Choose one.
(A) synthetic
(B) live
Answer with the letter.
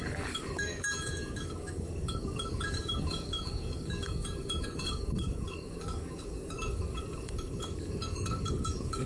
A